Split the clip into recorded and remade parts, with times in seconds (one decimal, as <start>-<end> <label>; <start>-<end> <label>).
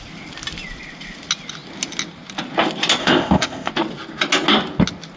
0.0-3.0 recorded; 3.0-3.7 remade; 3.7-5.2 recorded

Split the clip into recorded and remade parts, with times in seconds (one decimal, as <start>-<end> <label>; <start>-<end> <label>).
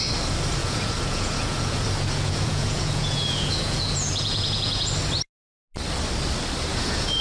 0.0-0.6 recorded; 0.6-4.9 remade; 4.9-6.7 recorded; 6.7-7.2 remade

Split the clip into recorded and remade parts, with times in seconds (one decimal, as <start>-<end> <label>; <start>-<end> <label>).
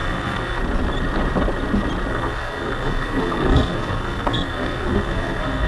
0.0-0.6 remade; 0.6-2.1 recorded; 2.1-5.7 remade